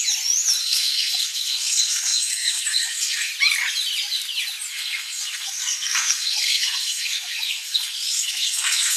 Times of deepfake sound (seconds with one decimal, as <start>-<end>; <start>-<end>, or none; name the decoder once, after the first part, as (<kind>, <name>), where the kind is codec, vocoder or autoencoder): 0.6-3.3 (codec, SNAC); 4.7-9.0